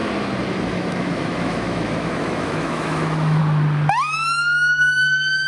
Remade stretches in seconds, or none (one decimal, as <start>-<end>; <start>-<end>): 0.6-3.4; 5.0-5.5